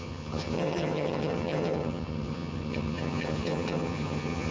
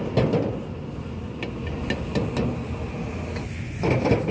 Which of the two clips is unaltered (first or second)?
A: second